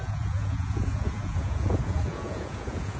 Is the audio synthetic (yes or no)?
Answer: yes